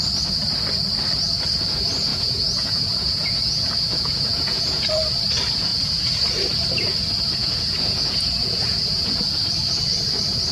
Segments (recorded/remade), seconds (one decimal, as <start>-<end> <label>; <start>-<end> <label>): 0.0-2.1 recorded; 2.1-4.9 remade; 4.9-5.7 recorded; 5.7-6.2 remade; 6.2-7.4 recorded; 7.4-9.2 remade; 9.2-10.5 recorded